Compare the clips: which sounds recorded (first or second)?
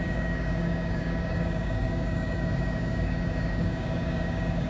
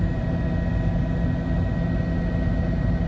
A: second